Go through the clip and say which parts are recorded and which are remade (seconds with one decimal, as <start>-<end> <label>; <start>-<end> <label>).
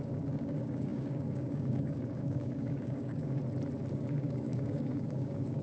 0.0-3.4 remade; 3.4-3.9 recorded; 3.9-5.6 remade